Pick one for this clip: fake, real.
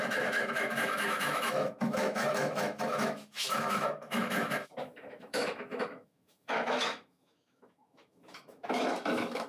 fake